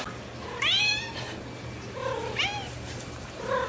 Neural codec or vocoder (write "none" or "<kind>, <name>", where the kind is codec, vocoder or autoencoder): none